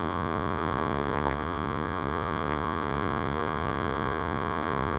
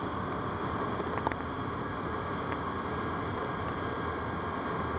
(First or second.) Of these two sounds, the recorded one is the second